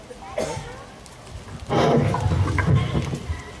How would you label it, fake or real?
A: real